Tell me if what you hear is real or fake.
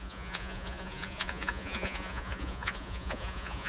fake